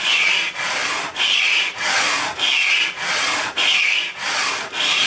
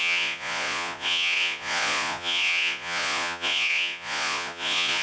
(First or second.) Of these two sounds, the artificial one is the second